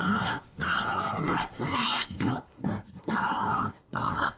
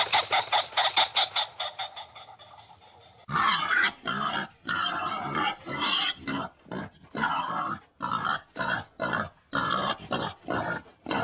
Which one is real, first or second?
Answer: second